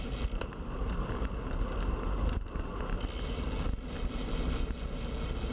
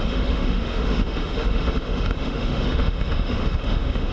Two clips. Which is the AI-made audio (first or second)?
second